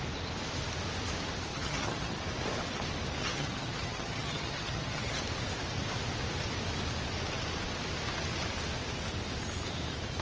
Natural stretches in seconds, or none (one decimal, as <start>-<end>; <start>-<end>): 0.0-1.5; 2.2-3.2; 5.2-10.2